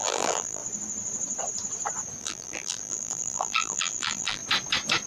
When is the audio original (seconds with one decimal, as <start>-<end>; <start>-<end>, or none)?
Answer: 0.6-2.2; 4.4-5.1